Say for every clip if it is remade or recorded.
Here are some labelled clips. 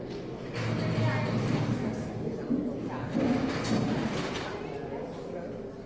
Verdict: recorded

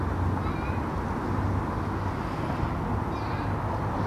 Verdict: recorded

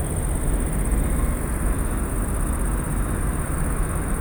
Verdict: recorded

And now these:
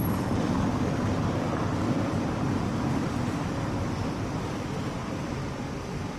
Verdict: remade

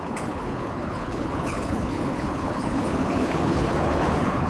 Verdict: remade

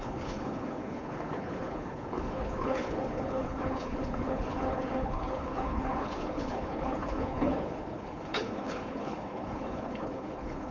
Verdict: remade